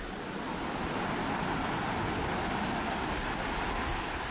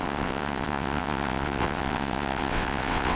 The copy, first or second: second